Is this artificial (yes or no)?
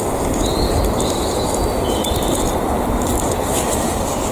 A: no